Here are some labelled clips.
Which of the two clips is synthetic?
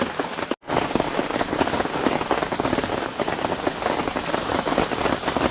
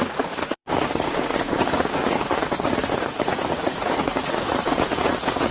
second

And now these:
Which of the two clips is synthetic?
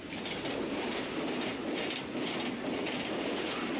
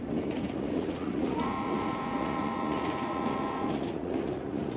second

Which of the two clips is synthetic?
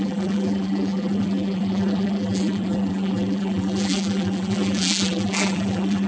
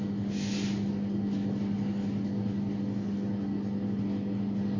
first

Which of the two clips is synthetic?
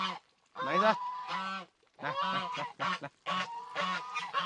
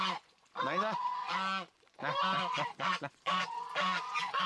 second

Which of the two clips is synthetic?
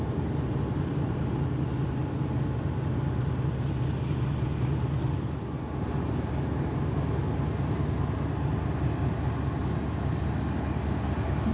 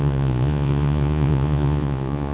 second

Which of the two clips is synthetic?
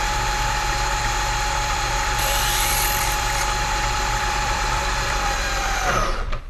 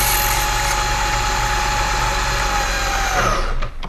first